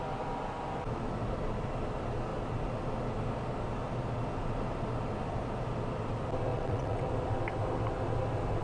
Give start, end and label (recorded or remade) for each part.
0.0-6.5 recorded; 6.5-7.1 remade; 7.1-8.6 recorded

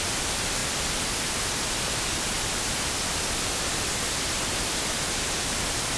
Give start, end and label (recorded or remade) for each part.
0.0-6.0 recorded

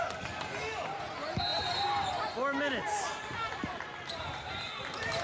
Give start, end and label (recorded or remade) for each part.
0.0-5.2 recorded

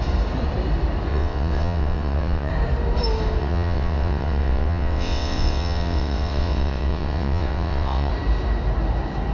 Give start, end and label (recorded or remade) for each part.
0.0-1.1 recorded; 1.1-2.5 remade; 2.5-3.4 recorded; 3.4-8.1 remade; 8.1-9.3 recorded

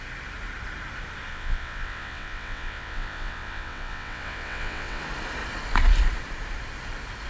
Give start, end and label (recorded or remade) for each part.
0.0-1.3 recorded; 1.3-5.0 remade; 5.0-7.3 recorded

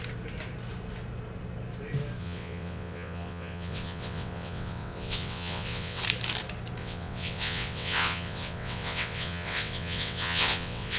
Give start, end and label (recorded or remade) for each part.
0.0-2.2 recorded; 2.2-6.0 remade; 6.0-6.8 recorded; 6.8-11.0 remade

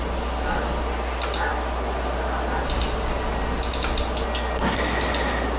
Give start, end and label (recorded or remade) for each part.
0.0-5.6 recorded

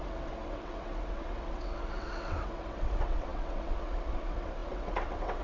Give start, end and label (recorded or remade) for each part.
0.0-5.4 remade